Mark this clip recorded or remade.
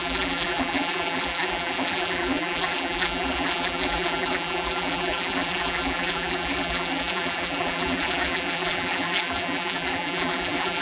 remade